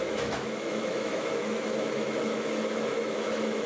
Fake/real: fake